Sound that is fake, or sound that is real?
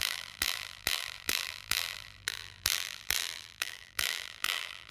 fake